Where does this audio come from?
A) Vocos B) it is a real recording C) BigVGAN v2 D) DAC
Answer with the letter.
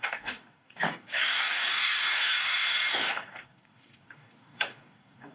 D